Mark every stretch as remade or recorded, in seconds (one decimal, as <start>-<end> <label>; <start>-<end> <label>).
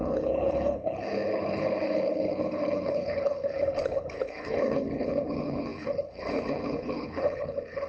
0.0-7.9 remade